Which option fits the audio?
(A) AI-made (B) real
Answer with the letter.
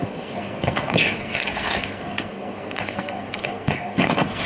A